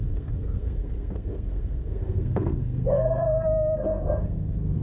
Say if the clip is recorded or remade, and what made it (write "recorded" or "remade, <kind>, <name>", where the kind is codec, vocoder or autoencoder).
remade, codec, SNAC